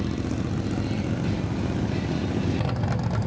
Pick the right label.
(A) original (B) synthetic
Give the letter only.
A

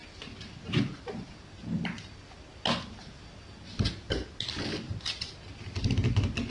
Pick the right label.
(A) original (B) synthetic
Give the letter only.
A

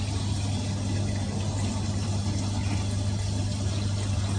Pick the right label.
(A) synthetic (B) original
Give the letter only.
B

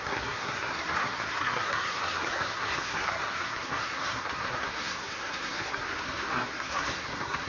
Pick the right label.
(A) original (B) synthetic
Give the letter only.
B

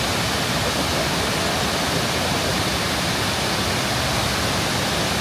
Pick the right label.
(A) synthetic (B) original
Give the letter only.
B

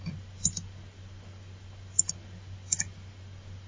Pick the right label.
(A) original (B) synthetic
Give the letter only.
A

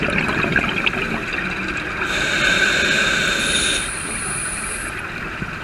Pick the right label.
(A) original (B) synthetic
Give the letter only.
A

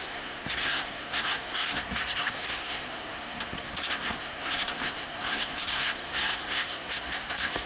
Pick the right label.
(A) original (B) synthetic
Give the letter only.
B